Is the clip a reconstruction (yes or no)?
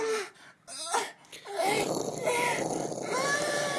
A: no